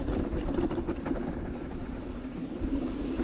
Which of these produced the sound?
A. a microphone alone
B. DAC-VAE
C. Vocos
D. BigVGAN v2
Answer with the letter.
D